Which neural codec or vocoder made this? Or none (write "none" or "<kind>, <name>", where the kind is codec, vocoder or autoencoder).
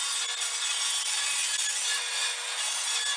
none